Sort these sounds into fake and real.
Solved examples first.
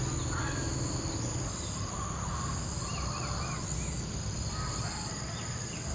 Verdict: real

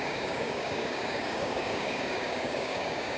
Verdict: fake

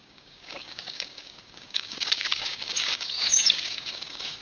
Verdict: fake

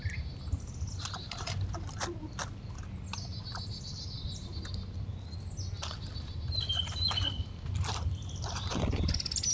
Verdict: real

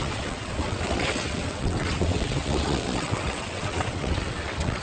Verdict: fake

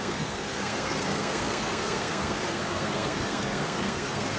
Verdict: fake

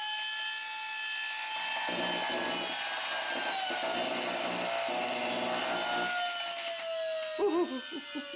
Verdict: real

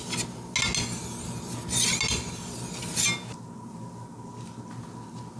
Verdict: real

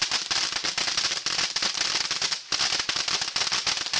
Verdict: real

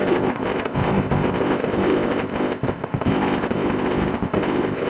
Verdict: fake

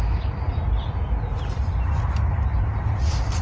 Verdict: real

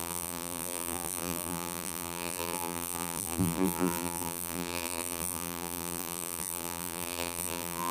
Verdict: fake